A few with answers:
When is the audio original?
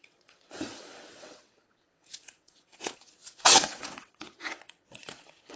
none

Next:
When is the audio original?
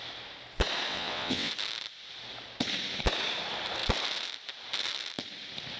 0.0-0.9; 1.5-5.8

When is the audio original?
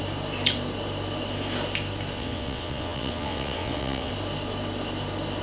0.0-2.2; 4.1-5.4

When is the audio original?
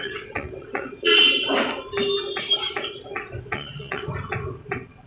1.1-3.4; 4.1-5.1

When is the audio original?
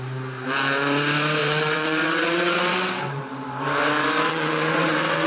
0.0-1.4; 3.2-4.3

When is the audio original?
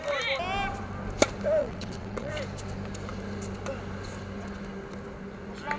0.0-1.6; 2.3-5.8